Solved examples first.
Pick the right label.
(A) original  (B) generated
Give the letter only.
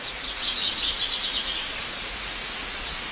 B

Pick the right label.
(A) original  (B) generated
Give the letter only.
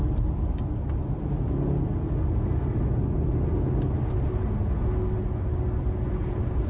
A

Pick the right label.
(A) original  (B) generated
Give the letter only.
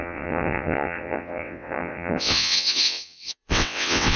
B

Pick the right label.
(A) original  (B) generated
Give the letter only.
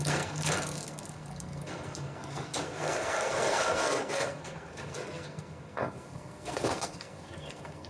B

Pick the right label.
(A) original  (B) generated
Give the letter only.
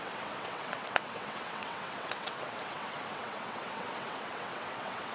B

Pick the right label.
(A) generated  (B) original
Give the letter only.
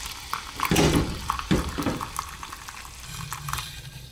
B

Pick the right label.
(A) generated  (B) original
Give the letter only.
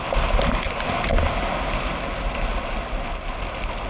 B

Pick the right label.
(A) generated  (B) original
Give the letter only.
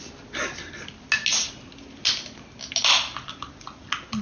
B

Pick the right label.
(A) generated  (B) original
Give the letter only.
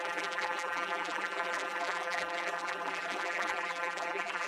A